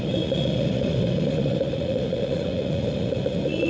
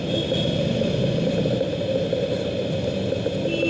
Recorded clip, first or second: second